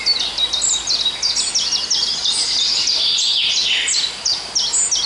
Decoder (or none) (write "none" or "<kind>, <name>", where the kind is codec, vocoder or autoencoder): none